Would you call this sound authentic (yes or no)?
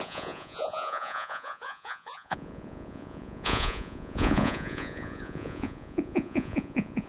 no